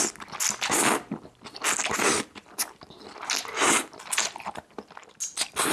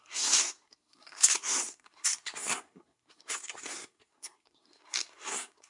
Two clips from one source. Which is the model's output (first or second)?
second